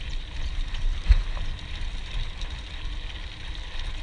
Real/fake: real